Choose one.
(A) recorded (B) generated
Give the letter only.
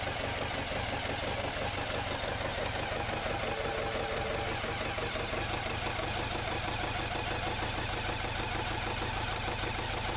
A